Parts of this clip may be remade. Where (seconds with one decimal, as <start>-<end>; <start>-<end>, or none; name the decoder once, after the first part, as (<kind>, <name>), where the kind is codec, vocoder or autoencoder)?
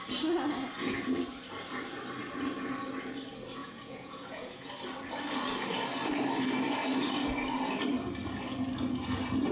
3.6-4.7 (vocoder, Vocos)